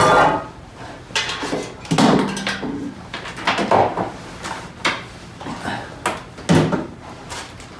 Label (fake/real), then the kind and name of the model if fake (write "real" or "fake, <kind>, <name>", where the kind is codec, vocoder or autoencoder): real